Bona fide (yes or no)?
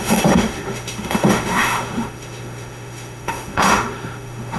no